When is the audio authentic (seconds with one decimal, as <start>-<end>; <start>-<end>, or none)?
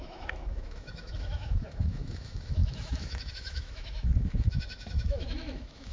none